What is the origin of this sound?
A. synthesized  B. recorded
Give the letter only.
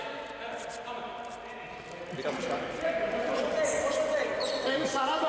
B